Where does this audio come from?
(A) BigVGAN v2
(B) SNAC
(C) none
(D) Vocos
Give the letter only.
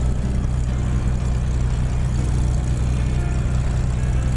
C